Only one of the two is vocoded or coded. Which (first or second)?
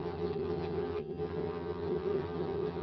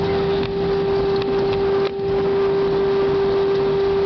first